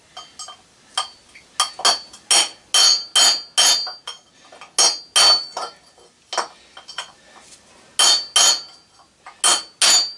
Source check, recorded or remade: recorded